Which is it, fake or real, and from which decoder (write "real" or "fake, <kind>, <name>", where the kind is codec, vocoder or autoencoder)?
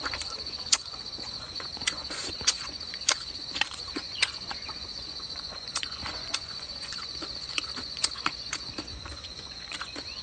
fake, vocoder, Vocos